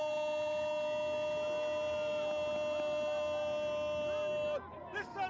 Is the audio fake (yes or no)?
no